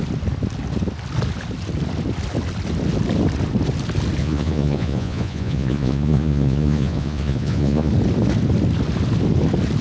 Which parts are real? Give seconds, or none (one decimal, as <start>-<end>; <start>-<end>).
0.0-4.2; 7.9-9.8